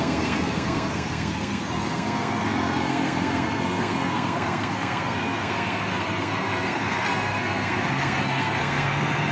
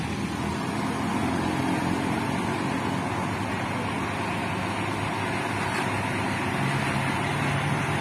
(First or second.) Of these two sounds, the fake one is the first